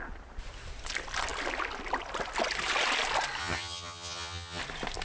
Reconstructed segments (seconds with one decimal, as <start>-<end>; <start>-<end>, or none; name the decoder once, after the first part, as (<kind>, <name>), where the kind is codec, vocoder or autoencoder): 3.4-4.6 (vocoder, HiFi-GAN)

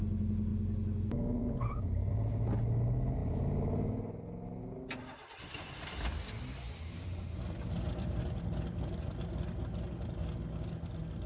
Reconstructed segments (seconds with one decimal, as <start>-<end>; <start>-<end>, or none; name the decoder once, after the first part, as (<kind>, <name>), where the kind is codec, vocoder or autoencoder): none

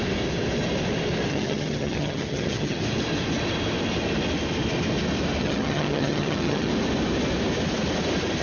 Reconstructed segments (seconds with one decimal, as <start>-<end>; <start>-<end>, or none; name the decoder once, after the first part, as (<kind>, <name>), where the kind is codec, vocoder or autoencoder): 1.3-2.8 (vocoder, HiFi-GAN); 5.4-6.7

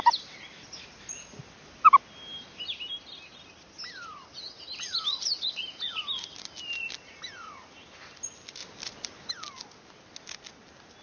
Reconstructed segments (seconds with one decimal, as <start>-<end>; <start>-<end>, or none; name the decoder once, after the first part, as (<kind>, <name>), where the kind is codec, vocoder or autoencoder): none

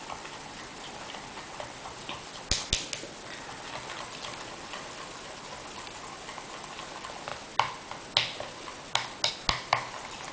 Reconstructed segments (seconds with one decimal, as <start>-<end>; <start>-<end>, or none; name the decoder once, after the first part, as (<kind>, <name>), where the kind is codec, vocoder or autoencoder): none

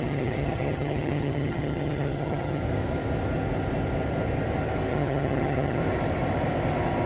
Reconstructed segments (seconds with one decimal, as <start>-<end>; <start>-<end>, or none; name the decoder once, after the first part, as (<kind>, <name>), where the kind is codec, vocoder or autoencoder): 0.0-2.6 (vocoder, HiFi-GAN); 4.9-5.8

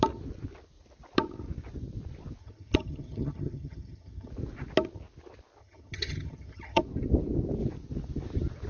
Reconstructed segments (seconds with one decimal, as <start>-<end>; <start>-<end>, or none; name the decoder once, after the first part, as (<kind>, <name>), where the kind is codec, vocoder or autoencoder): 2.4-4.3 (vocoder, HiFi-GAN); 5.6-6.8